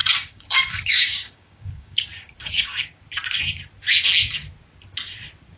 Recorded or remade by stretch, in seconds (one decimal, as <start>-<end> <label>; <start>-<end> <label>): 0.0-3.0 remade; 3.0-5.6 recorded